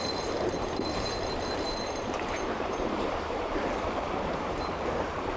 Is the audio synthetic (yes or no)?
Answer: yes